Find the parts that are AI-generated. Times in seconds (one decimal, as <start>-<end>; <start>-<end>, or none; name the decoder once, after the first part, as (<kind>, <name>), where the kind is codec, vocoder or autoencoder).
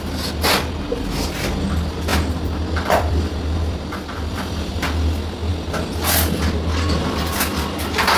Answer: 2.1-4.7 (vocoder, BigVGAN v2)